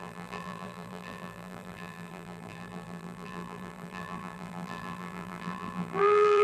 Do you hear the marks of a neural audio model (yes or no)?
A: yes